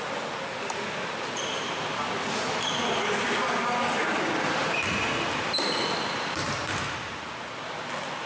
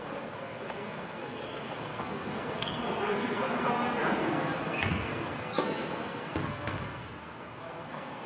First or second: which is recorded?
first